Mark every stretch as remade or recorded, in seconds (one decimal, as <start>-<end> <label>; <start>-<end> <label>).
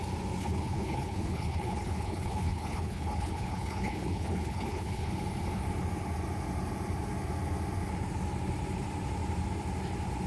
0.0-0.4 recorded; 0.4-5.1 remade; 5.1-10.3 recorded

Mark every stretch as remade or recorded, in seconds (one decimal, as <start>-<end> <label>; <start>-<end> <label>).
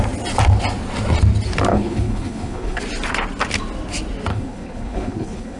0.0-1.7 recorded; 1.7-2.8 remade; 2.8-4.3 recorded; 4.3-5.6 remade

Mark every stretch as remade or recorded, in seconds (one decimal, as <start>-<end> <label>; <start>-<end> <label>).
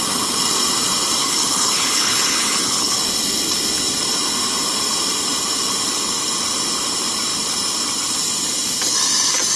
0.0-1.2 recorded; 1.2-3.0 remade; 3.0-9.6 recorded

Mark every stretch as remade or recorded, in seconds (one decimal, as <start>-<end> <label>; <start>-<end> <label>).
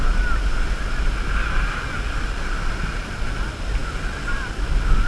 0.0-5.1 recorded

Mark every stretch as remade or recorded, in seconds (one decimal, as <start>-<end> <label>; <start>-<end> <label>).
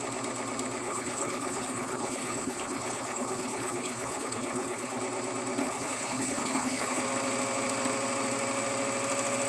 0.0-0.8 recorded; 0.8-5.0 remade; 5.0-5.6 recorded; 5.6-7.0 remade; 7.0-9.5 recorded